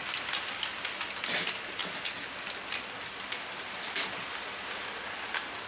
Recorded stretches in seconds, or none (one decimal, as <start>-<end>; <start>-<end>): 0.0-5.7